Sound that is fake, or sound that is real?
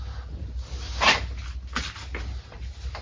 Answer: real